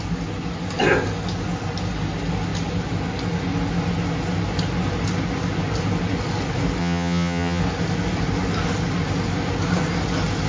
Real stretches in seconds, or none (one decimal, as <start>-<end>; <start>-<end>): 0.0-6.8; 7.6-10.5

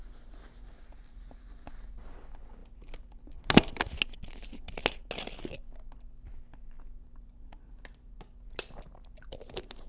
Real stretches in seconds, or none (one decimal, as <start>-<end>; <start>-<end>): 0.0-9.9

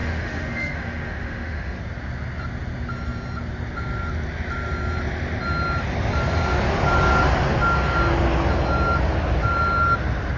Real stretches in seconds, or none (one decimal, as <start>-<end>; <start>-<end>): 1.8-10.4

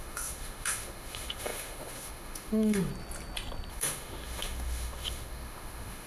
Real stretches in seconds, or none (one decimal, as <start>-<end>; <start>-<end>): 2.9-3.7

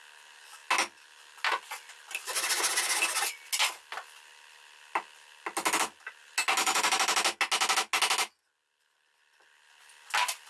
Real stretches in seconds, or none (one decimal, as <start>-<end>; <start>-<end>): 0.0-10.5

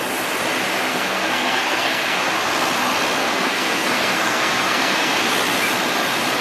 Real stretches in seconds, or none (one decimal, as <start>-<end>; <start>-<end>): 0.0-0.9; 2.2-3.2; 5.2-6.4